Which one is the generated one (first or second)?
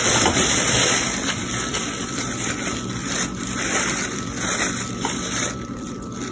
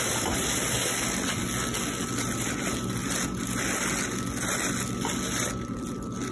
first